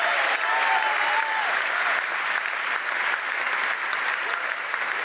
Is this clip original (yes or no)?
no